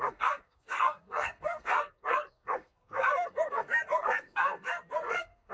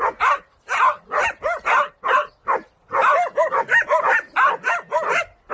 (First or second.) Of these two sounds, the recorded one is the second